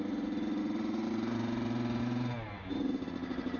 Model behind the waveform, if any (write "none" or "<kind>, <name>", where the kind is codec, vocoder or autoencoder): vocoder, BigVGAN v2